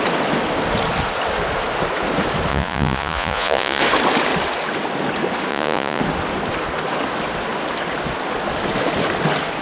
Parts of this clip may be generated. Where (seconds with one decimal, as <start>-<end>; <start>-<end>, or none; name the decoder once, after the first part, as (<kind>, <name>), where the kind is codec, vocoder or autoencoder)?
2.5-3.8 (vocoder, Vocos); 5.5-6.0